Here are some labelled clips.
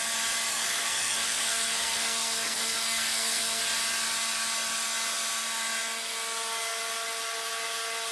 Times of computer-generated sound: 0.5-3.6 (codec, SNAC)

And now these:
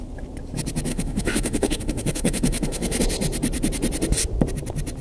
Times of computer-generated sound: 0.9-3.0 (autoencoder, DAC-VAE)

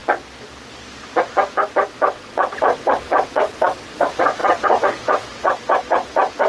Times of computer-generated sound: 2.1-6.5 (vocoder, WaveNeXt)

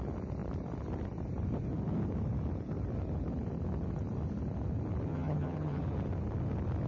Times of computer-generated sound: 5.1-5.8 (vocoder, HiFi-GAN)

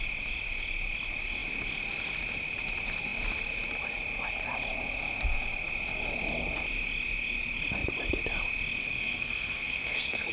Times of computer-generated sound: 8.8-10.3 (codec, SNAC)

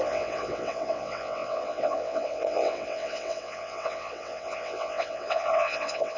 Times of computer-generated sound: 0.0-6.2 (vocoder, WaveNeXt)